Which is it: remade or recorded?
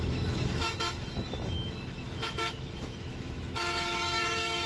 remade